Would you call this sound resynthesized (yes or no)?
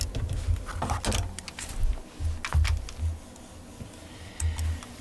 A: no